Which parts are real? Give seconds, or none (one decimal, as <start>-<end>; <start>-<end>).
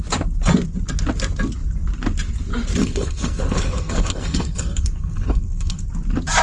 0.0-2.8; 5.8-6.4